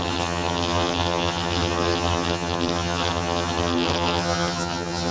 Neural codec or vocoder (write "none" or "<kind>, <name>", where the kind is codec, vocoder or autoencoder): vocoder, HiFi-GAN